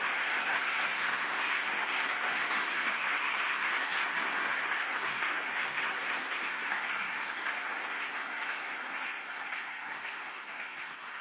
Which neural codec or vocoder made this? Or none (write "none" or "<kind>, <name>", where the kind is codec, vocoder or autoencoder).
codec, SNAC